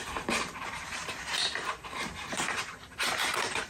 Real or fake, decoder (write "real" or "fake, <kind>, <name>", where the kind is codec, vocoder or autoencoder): fake, vocoder, BigVGAN v2